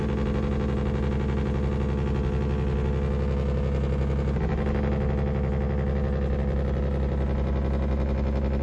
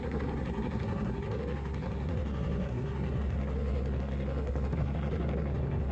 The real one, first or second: first